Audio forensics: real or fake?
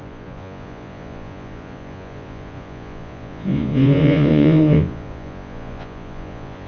fake